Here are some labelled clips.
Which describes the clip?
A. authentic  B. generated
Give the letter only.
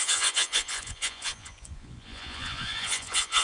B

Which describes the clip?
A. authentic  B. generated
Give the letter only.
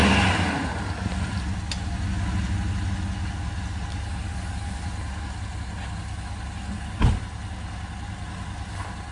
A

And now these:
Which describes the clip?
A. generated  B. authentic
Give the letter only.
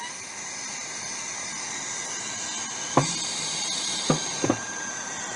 B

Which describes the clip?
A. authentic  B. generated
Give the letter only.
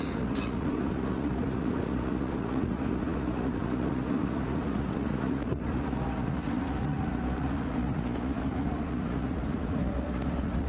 B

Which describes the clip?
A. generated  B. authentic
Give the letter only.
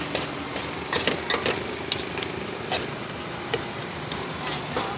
B